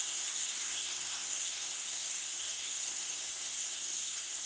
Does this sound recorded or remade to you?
remade